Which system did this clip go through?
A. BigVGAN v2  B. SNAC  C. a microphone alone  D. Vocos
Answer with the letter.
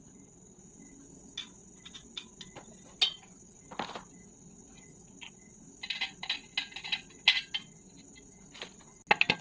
C